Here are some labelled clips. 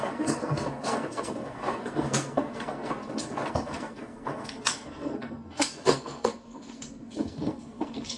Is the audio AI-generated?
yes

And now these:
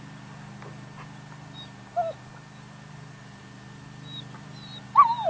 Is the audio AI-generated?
no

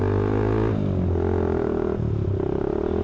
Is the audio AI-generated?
no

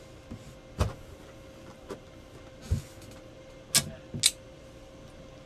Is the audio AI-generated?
no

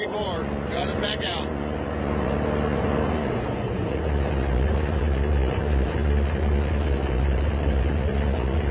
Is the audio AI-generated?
yes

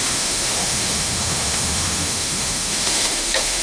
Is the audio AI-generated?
yes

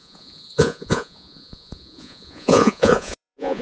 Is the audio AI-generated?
yes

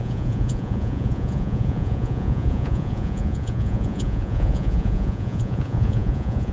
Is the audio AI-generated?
yes